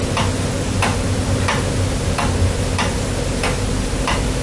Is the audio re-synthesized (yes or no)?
no